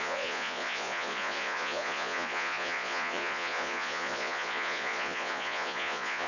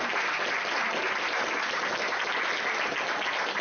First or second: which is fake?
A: first